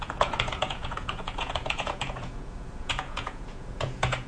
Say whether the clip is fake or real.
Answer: fake